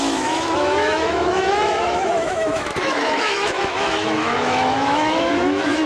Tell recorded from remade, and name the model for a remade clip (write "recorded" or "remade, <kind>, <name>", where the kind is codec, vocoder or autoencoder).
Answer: remade, autoencoder, DAC-VAE